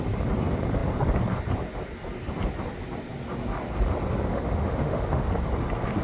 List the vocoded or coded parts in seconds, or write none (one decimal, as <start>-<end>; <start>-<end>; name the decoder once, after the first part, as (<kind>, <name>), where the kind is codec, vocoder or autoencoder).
4.3-5.3 (autoencoder, DAC-VAE)